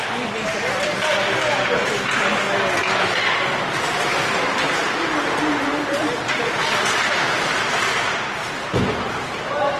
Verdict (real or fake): real